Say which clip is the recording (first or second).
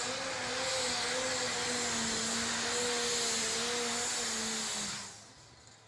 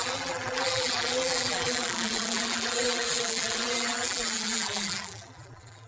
first